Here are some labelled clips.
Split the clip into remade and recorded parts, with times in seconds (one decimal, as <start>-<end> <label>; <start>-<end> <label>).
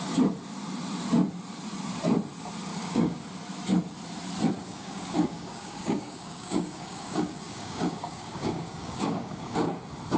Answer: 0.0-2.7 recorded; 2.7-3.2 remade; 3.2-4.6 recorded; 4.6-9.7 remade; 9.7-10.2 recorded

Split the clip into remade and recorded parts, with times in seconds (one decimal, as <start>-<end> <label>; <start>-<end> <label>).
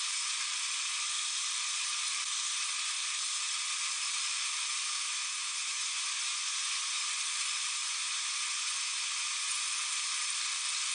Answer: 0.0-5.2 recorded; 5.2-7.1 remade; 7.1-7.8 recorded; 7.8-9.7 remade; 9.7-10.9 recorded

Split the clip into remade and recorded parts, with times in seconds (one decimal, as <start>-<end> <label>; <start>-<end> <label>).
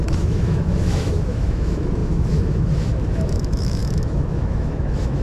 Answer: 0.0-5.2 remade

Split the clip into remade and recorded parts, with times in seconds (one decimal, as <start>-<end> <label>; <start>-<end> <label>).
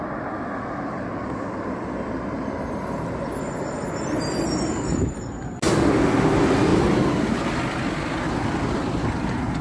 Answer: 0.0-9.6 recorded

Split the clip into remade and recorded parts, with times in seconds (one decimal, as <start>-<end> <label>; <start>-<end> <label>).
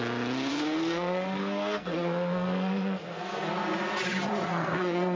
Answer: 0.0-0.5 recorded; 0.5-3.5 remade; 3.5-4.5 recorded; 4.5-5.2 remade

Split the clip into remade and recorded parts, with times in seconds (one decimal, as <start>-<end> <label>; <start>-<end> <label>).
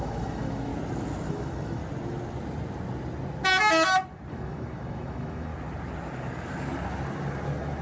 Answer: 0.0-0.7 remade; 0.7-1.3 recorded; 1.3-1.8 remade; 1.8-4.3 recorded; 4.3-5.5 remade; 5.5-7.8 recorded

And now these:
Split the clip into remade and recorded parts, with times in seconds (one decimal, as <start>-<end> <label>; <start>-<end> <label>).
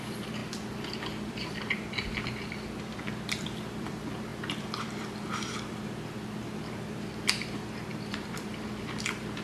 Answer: 0.0-9.4 remade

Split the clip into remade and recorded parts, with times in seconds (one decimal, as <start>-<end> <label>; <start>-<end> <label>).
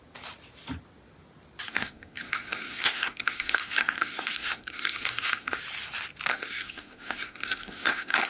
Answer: 0.0-1.7 recorded; 1.7-5.6 remade; 5.6-6.3 recorded; 6.3-8.3 remade